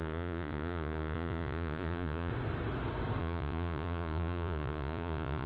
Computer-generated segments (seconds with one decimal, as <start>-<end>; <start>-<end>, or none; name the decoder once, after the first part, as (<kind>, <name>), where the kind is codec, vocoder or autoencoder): 0.0-2.3 (vocoder, Vocos); 3.2-5.5